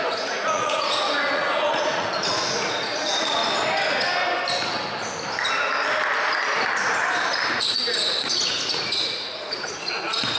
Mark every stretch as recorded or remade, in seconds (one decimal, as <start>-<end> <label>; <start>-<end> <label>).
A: 0.0-3.4 remade; 3.4-7.5 recorded; 7.5-10.4 remade